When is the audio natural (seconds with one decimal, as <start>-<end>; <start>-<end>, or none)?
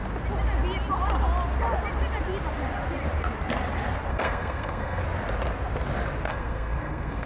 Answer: 0.0-4.1; 5.0-6.3